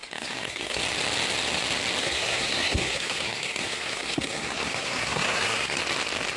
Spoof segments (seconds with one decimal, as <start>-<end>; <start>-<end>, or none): 0.0-0.8; 2.0-5.8